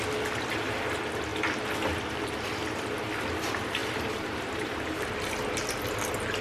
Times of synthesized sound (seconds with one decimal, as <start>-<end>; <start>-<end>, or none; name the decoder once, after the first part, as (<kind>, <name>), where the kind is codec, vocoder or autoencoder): 3.8-5.3 (vocoder, BigVGAN v2)